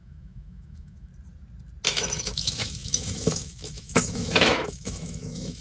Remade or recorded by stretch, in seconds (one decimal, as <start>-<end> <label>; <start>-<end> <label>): 0.0-1.1 remade; 1.1-1.9 recorded; 1.9-5.6 remade